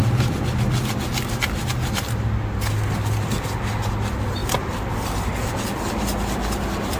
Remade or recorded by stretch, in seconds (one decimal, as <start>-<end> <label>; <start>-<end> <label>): 0.0-7.0 recorded